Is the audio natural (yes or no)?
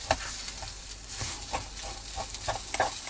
yes